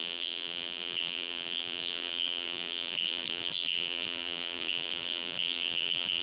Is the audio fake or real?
fake